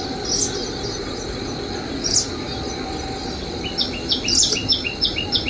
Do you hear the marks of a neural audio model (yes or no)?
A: no